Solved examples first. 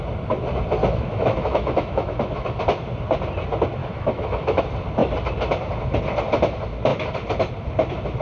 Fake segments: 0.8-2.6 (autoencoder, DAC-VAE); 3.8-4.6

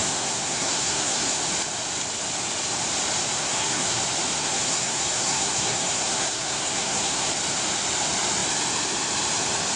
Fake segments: 0.0-1.4 (codec, SNAC); 3.4-4.0; 4.4-7.3

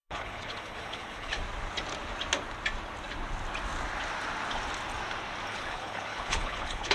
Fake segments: 0.0-1.4 (codec, HILCodec); 5.5-6.9

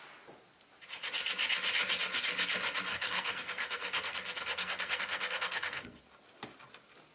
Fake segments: 2.9-6.0 (codec, SNAC)